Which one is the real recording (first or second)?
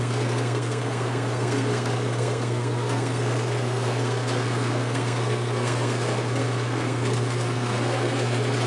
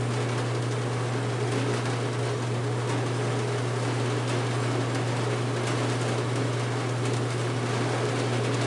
second